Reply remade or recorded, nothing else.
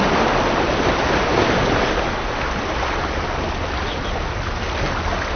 recorded